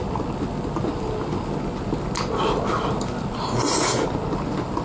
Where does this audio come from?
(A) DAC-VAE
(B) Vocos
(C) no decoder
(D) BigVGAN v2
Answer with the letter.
C